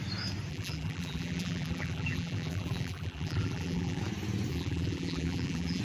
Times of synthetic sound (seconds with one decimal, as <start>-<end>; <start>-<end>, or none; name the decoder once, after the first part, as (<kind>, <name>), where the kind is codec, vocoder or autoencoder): 0.5-4.0 (vocoder, BigVGAN v2); 4.5-5.8